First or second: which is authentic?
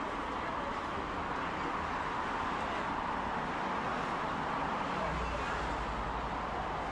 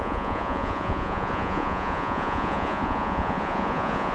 first